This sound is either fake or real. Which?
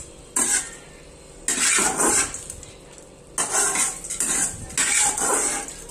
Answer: real